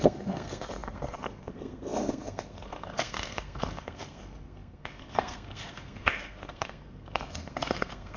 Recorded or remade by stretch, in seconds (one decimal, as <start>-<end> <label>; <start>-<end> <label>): 0.0-8.2 remade